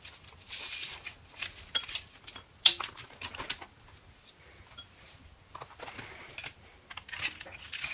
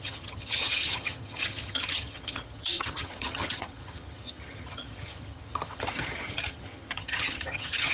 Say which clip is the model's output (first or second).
second